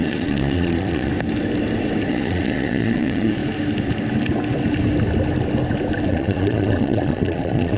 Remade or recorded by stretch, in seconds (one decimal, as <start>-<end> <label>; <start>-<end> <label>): 0.0-1.1 remade; 1.1-2.1 recorded; 2.1-3.4 remade; 3.4-6.1 recorded; 6.1-7.8 remade